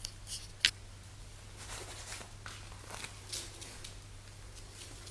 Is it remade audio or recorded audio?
recorded